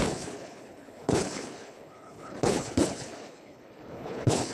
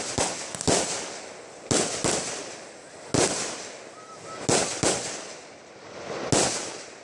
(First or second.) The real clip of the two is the second